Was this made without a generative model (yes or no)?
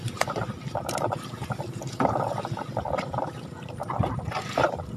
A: no